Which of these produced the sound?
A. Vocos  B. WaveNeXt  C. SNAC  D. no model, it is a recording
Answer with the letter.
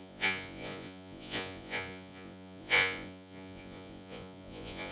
A